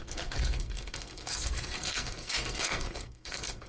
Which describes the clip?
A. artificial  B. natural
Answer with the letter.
A